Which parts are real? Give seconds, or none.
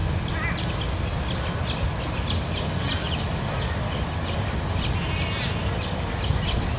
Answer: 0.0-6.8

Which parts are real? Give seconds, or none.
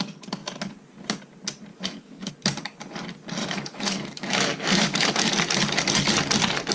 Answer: 0.0-1.7; 2.3-3.4; 5.3-6.7